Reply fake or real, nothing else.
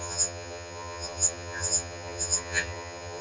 fake